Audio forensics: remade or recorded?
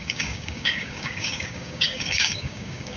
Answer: remade